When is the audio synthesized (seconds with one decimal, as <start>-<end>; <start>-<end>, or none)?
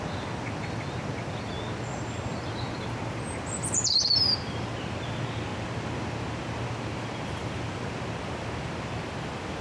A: none